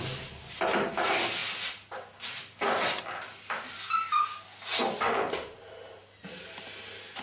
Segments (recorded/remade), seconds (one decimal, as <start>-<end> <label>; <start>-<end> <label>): 0.0-7.2 recorded